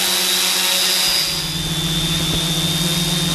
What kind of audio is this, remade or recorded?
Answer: recorded